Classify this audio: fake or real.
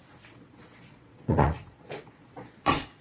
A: fake